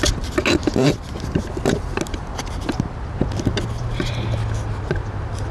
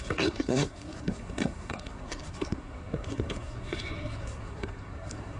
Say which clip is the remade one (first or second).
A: second